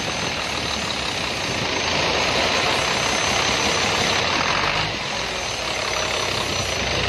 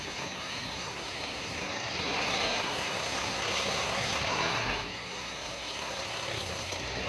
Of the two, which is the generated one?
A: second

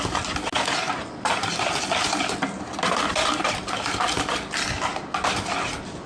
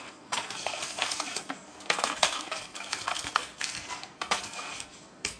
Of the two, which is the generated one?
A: second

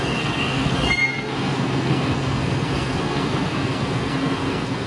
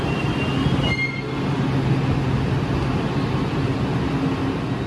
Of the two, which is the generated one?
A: first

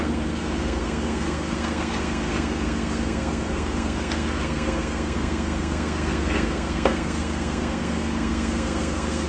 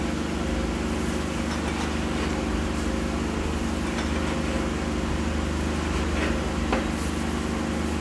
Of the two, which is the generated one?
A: first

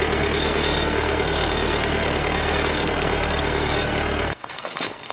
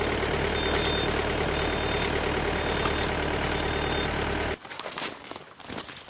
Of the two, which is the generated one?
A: first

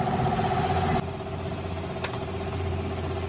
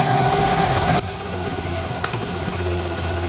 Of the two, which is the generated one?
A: second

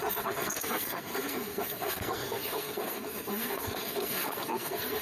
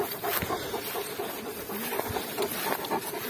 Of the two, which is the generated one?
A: first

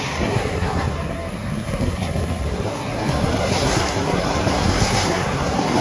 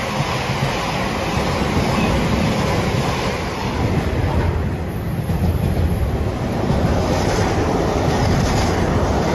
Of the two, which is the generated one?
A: first